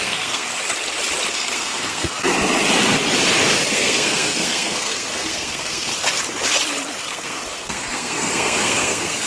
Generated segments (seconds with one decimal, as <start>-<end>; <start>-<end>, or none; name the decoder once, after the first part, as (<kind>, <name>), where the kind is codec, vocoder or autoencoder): 0.0-0.5 (codec, SNAC); 1.3-2.3; 3.7-5.9; 7.0-9.3